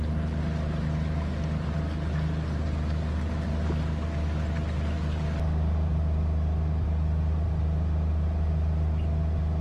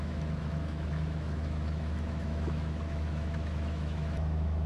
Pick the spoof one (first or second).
second